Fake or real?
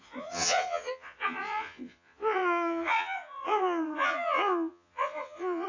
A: fake